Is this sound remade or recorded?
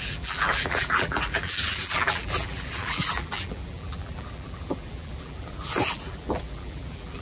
remade